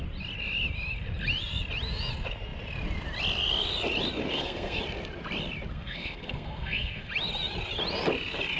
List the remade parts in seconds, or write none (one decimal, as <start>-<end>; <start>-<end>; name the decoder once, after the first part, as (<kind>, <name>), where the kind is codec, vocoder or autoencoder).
4.3-4.8 (codec, SNAC); 5.7-7.1